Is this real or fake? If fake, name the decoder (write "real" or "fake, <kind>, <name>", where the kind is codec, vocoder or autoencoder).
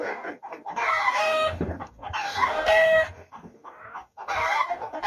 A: fake, codec, DAC